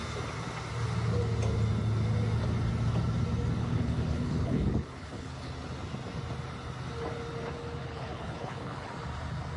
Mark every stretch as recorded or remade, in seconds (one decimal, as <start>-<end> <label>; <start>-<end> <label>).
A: 0.0-3.6 recorded; 3.6-5.5 remade; 5.5-7.8 recorded; 7.8-8.9 remade; 8.9-9.6 recorded